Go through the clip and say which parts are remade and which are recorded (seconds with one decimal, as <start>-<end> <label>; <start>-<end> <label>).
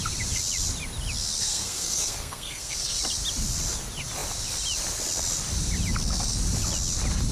0.0-1.4 recorded; 1.4-3.0 remade; 3.0-7.3 recorded